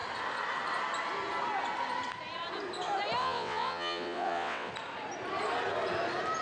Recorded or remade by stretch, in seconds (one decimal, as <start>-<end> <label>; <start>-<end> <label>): 0.0-3.2 recorded; 3.2-4.7 remade; 4.7-6.4 recorded